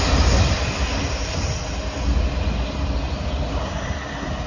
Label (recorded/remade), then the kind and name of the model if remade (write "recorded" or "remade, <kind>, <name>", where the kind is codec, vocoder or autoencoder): recorded